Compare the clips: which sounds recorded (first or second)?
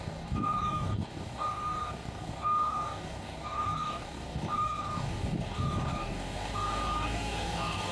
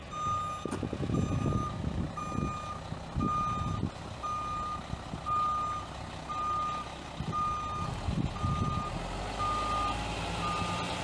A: second